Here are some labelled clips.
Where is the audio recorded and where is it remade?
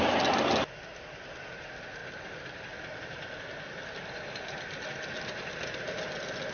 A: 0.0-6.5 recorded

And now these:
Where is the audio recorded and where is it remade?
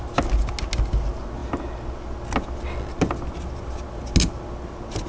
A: 0.0-5.1 recorded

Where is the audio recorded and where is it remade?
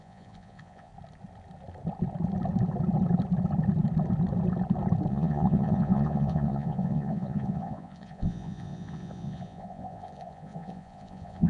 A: 0.0-0.9 remade; 0.9-5.1 recorded; 5.1-11.5 remade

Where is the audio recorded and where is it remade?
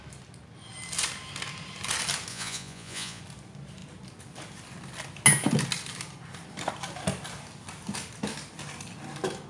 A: 0.0-2.3 recorded; 2.3-3.2 remade; 3.2-9.5 recorded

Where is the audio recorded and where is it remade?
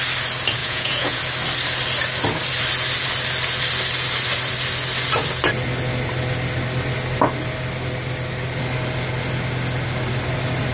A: 0.0-0.6 recorded; 0.6-1.2 remade; 1.2-10.7 recorded